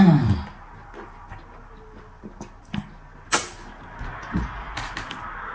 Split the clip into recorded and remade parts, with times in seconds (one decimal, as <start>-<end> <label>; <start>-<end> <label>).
0.0-4.1 recorded; 4.1-4.9 remade; 4.9-5.5 recorded